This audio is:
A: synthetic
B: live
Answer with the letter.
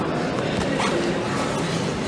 B